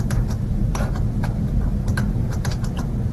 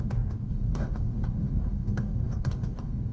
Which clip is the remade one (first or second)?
second